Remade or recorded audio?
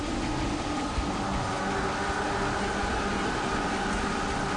recorded